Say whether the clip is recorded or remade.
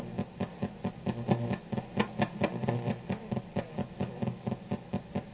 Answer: recorded